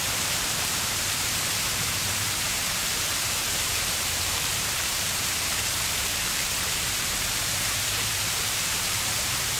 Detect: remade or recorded remade